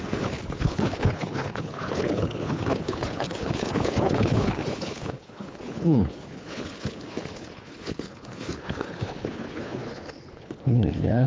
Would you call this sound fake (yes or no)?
yes